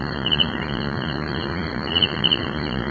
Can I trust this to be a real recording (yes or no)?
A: no